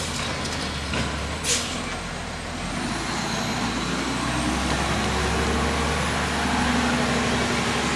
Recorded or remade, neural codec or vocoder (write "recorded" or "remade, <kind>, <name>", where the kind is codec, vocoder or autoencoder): recorded